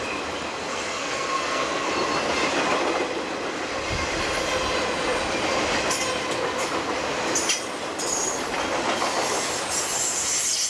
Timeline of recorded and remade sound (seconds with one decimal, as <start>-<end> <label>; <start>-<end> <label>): 0.0-0.7 recorded; 0.7-1.9 remade; 1.9-10.7 recorded